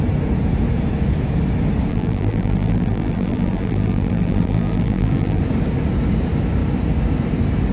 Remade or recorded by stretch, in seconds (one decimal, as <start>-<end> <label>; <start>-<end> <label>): 0.0-1.9 recorded; 1.9-5.4 remade; 5.4-7.7 recorded